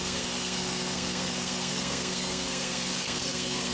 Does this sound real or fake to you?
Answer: fake